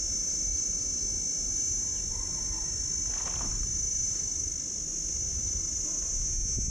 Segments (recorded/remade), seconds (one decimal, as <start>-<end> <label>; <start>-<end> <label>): 0.0-6.7 recorded